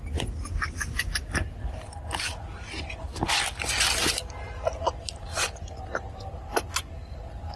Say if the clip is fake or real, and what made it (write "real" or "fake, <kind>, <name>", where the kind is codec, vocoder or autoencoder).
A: real